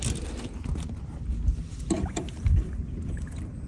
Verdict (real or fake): real